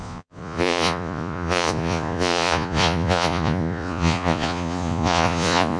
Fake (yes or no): yes